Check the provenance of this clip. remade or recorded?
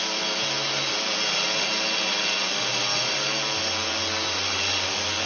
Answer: recorded